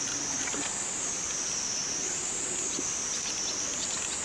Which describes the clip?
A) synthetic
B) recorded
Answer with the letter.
B